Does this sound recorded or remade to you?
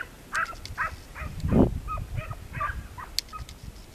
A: recorded